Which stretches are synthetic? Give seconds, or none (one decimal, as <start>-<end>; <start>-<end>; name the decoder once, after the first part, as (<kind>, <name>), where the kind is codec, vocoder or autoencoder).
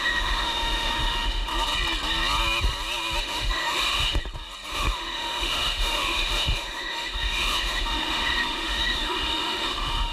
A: 0.0-1.5 (autoencoder, DAC-VAE); 3.2-4.2; 4.7-10.1